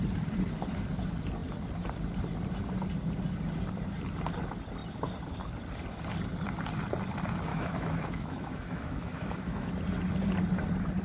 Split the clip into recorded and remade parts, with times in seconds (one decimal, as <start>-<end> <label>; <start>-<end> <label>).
0.0-7.5 recorded; 7.5-9.7 remade; 9.7-11.0 recorded